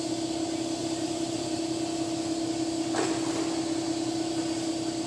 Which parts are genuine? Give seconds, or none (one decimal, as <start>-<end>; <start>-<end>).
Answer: 0.0-0.8; 1.6-5.1